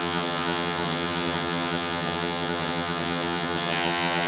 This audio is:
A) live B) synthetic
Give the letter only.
B